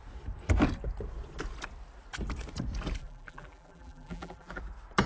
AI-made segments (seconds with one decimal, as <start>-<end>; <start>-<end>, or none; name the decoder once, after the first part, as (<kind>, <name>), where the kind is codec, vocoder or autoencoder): 3.0-4.6 (vocoder, BigVGAN v2)